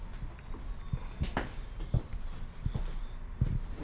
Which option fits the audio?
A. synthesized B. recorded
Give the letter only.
B